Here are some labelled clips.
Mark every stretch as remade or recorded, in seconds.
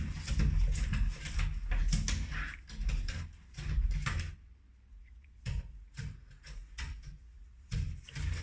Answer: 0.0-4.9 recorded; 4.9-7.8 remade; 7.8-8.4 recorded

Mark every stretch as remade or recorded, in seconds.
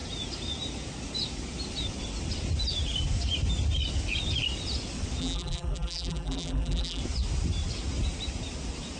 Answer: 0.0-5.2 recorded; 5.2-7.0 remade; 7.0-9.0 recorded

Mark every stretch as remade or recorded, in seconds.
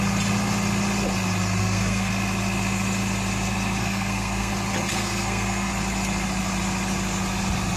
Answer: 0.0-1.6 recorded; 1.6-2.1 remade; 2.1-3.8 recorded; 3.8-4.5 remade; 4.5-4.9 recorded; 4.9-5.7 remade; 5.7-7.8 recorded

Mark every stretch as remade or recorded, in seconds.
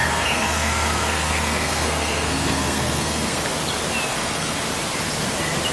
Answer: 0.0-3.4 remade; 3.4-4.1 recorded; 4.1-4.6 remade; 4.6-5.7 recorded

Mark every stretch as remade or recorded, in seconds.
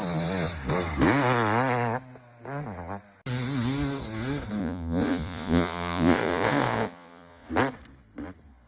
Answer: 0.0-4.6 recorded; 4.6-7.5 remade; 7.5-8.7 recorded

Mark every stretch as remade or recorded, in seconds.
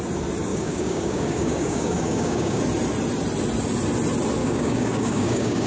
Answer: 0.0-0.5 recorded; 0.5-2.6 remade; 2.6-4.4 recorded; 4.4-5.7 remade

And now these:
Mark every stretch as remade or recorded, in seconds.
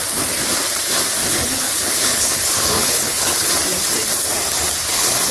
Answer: 0.0-1.3 recorded; 1.3-3.5 remade; 3.5-5.3 recorded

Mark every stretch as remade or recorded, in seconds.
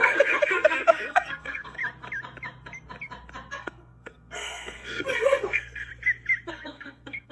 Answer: 0.0-1.8 remade; 1.8-3.5 recorded; 3.5-5.9 remade; 5.9-6.5 recorded; 6.5-7.3 remade